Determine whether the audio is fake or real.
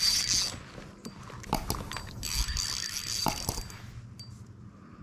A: real